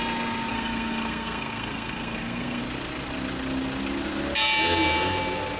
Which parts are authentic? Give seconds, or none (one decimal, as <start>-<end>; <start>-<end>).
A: 0.0-0.5; 2.6-5.6